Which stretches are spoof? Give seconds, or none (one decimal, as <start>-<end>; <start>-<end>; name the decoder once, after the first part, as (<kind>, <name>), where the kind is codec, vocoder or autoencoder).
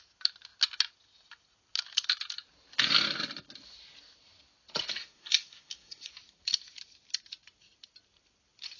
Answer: 5.0-6.1 (codec, SNAC)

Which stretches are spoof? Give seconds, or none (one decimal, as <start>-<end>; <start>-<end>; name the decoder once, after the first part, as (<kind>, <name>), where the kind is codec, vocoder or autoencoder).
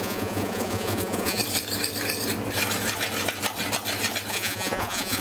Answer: 0.0-1.4 (vocoder, Vocos); 4.3-5.2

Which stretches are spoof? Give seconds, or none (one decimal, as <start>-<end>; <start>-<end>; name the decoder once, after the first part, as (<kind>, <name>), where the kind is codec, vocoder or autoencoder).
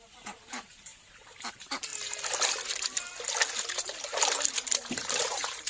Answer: 0.0-0.9 (vocoder, BigVGAN v2); 1.5-1.9; 3.6-5.7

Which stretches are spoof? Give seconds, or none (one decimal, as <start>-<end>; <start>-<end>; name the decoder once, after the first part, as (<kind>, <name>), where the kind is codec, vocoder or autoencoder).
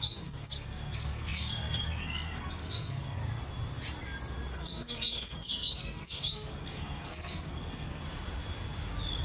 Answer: 0.0-3.2 (codec, SNAC); 4.5-8.0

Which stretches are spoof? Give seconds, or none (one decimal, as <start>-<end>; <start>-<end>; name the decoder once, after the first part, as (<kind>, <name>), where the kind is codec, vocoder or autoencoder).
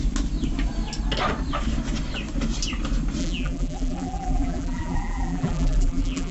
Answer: 3.2-6.3 (vocoder, BigVGAN v2)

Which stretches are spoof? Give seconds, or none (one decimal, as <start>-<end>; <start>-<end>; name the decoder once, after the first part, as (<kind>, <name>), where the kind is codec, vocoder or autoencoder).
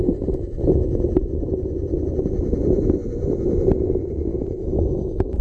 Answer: 4.3-5.4 (vocoder, Vocos)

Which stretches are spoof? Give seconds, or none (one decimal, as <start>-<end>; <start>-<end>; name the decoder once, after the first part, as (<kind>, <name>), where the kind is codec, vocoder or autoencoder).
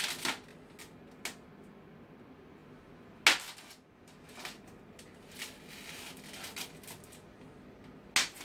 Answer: none